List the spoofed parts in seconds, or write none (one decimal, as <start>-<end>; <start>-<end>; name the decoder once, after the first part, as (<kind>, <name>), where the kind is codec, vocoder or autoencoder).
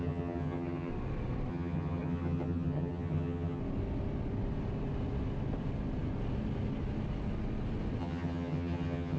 0.0-0.9 (vocoder, HiFi-GAN); 1.5-3.6; 8.0-9.2